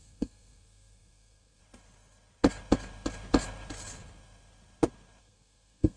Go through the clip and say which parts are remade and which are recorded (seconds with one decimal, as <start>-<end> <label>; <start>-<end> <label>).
0.0-1.6 remade; 1.6-5.2 recorded; 5.2-6.0 remade